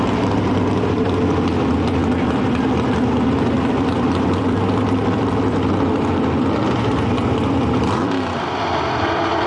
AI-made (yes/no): yes